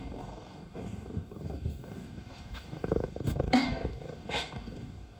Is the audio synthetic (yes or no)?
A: yes